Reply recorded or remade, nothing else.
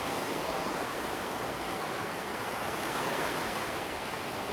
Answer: remade